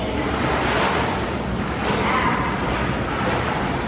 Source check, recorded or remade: recorded